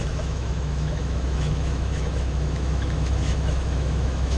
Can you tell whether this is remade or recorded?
remade